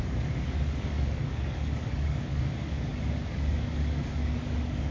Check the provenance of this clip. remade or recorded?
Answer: remade